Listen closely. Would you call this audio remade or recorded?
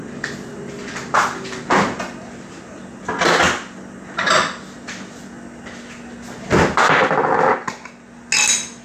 recorded